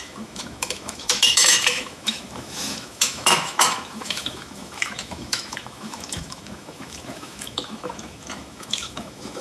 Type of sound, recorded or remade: remade